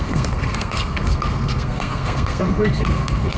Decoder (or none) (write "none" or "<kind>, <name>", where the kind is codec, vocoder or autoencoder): codec, SNAC